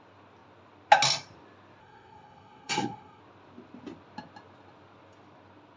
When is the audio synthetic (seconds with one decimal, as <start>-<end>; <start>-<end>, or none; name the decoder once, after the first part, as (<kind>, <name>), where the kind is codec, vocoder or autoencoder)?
1.8-3.2 (codec, SNAC)